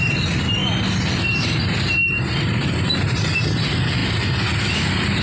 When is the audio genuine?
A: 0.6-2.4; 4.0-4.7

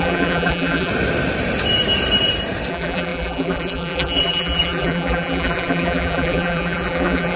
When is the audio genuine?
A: 0.9-2.7